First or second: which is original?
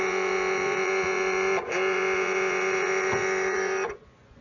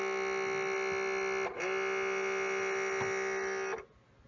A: second